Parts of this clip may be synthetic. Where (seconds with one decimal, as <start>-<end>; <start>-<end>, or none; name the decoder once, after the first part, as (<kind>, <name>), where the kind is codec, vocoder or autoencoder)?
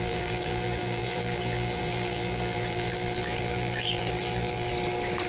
0.0-4.7 (vocoder, BigVGAN v2)